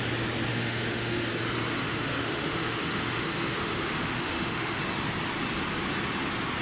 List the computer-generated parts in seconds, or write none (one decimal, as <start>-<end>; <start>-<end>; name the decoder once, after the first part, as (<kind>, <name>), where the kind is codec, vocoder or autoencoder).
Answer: 0.5-1.3 (autoencoder, DAC-VAE); 1.8-4.8